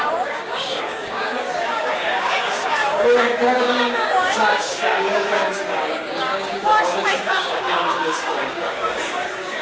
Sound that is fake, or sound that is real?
fake